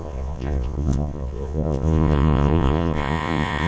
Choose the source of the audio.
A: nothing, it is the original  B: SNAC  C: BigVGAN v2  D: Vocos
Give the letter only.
D